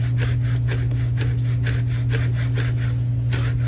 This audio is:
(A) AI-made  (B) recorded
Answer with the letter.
B